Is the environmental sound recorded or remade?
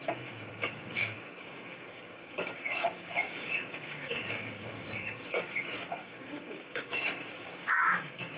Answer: remade